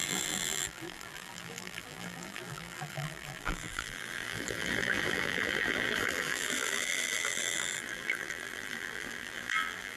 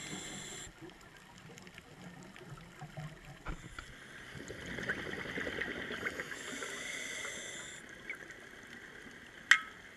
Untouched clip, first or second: second